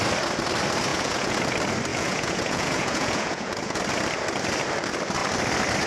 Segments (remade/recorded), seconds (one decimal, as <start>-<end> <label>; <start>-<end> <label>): 0.0-0.9 recorded; 0.9-1.4 remade; 1.4-1.9 recorded; 1.9-3.8 remade; 3.8-5.9 recorded